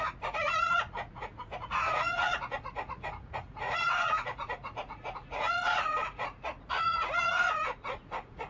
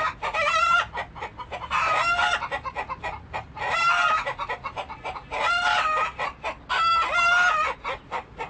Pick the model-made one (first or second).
first